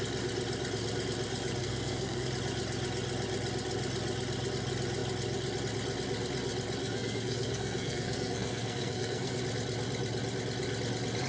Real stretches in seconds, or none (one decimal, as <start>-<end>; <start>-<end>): 0.0-1.6; 2.3-6.8; 9.4-11.3